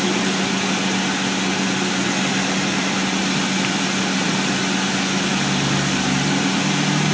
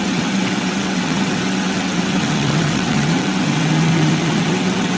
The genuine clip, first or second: first